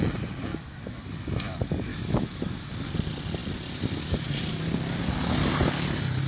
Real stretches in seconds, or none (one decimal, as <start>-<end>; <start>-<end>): 0.0-0.5; 1.0-1.9; 2.6-6.3